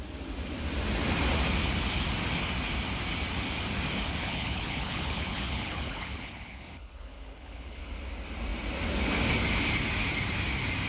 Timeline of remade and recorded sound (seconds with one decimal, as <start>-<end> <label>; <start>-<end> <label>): 0.0-4.2 recorded; 4.2-7.9 remade; 7.9-10.9 recorded

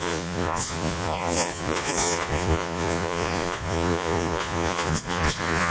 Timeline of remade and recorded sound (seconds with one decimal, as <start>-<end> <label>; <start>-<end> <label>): 0.0-5.7 remade

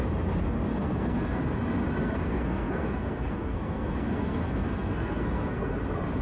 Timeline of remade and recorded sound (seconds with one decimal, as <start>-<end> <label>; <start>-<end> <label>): 0.0-0.7 recorded; 0.7-1.4 remade; 1.4-2.0 recorded; 2.0-5.7 remade; 5.7-6.2 recorded

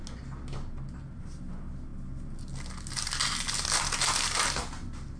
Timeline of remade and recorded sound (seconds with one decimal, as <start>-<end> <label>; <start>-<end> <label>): 0.0-5.2 recorded